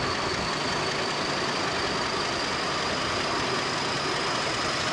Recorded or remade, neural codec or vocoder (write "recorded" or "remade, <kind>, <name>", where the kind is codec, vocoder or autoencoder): recorded